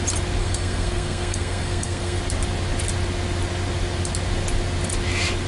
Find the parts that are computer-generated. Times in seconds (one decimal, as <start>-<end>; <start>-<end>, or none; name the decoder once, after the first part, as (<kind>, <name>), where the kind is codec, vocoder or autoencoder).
0.4-2.2 (codec, SNAC)